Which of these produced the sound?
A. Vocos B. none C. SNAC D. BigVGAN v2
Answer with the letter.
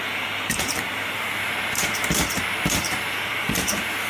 D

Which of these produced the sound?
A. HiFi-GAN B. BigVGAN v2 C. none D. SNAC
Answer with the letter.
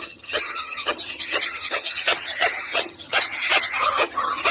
A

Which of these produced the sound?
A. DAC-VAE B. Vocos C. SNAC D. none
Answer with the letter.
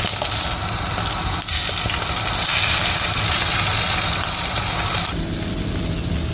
D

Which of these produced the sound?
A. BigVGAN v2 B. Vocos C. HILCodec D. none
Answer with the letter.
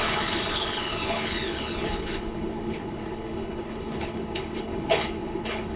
C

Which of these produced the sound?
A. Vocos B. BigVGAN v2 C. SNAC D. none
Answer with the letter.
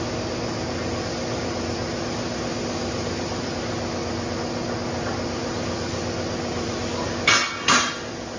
D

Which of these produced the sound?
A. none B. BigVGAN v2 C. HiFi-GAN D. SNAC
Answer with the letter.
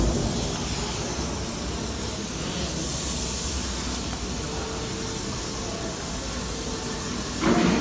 A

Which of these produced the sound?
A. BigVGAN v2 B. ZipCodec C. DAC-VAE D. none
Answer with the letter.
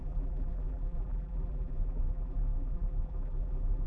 A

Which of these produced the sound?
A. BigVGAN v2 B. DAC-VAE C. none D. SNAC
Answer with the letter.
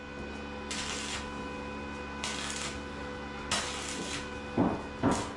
C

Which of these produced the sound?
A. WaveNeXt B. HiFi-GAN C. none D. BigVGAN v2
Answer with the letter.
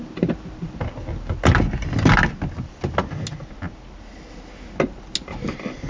C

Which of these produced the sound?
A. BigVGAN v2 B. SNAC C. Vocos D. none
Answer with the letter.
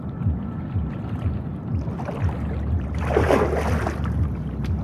D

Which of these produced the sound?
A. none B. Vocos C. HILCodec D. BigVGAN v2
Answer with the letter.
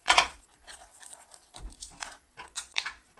B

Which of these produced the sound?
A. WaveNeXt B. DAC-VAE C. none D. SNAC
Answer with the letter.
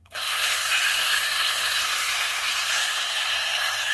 D